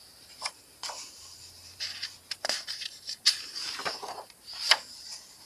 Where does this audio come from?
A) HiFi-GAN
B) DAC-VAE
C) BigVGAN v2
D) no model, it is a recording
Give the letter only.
C